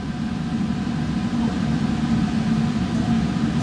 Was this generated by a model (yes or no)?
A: no